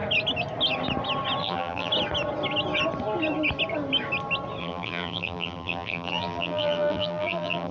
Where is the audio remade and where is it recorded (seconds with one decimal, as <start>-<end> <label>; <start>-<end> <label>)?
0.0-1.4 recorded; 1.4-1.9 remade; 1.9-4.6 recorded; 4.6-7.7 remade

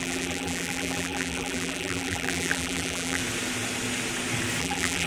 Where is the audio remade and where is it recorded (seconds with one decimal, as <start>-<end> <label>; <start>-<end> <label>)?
0.0-3.2 remade; 3.2-4.6 recorded; 4.6-5.1 remade

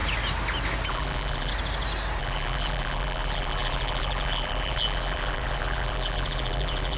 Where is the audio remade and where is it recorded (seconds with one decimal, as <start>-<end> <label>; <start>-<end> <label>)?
0.0-0.9 recorded; 0.9-1.5 remade; 1.5-2.2 recorded; 2.2-7.0 remade

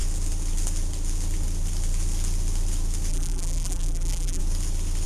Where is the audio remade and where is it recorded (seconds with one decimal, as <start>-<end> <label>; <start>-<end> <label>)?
0.0-3.1 recorded; 3.1-4.4 remade; 4.4-5.1 recorded

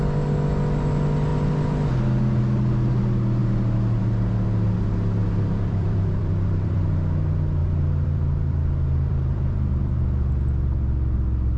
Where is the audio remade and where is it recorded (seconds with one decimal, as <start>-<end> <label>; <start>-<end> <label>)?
0.0-5.2 recorded; 5.2-6.9 remade; 6.9-7.6 recorded; 7.6-10.0 remade; 10.0-11.6 recorded

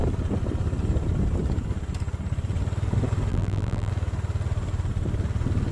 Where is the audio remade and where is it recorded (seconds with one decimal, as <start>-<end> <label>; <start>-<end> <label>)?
0.0-3.3 recorded; 3.3-3.9 remade; 3.9-5.7 recorded